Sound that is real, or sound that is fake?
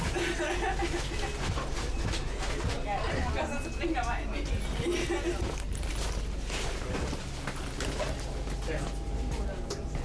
real